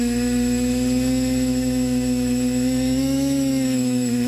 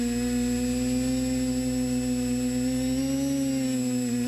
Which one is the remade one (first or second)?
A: first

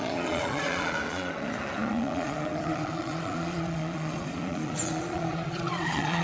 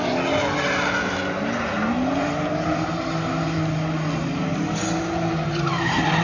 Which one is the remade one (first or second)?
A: first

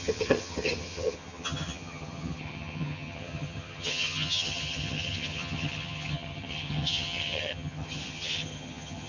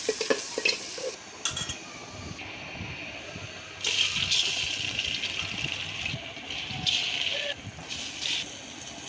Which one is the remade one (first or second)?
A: first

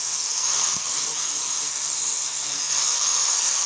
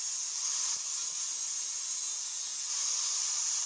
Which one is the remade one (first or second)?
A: first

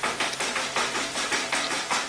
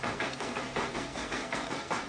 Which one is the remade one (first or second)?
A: second